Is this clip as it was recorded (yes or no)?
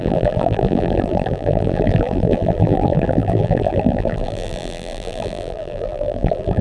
no